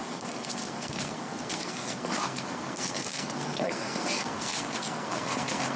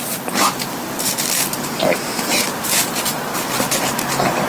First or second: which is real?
second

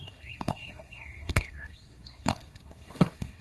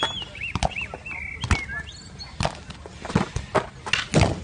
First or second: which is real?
second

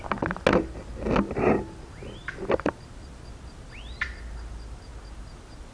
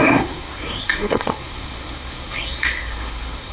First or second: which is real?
first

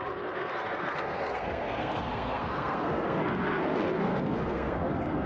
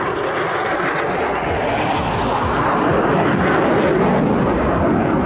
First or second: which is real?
second